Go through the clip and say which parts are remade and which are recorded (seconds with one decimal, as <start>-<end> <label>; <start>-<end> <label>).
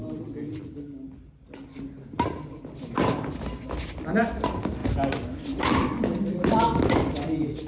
0.0-7.7 recorded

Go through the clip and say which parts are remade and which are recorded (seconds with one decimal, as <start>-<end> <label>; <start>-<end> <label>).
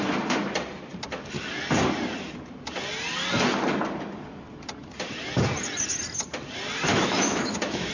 0.0-6.9 recorded; 6.9-7.9 remade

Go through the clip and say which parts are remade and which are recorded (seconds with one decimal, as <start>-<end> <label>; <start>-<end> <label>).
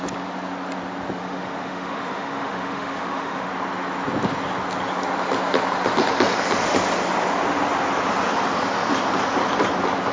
0.0-1.2 recorded; 1.2-3.5 remade; 3.5-10.1 recorded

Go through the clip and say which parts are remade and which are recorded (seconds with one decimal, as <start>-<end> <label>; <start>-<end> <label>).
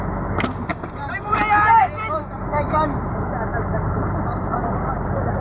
0.0-0.7 recorded; 0.7-1.4 remade; 1.4-3.5 recorded; 3.5-5.4 remade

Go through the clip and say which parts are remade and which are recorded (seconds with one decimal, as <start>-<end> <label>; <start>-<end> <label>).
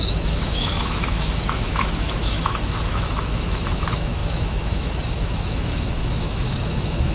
0.0-7.1 remade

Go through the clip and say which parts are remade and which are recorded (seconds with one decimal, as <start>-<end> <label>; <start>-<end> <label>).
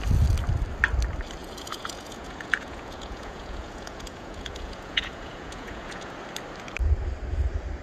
0.0-1.4 recorded; 1.4-6.1 remade; 6.1-7.8 recorded